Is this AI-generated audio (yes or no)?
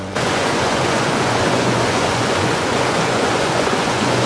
yes